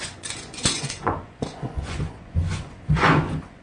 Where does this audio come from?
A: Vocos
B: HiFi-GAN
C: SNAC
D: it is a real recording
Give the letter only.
A